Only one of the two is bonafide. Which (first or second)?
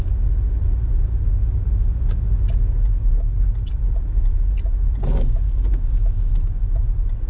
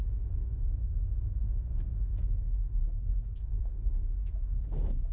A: first